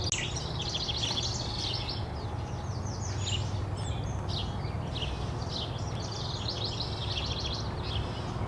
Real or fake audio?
real